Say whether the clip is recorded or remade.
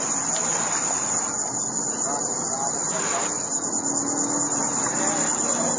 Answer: recorded